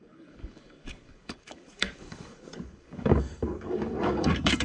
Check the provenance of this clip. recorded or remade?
remade